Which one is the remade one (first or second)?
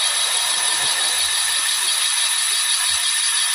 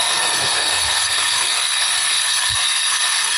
second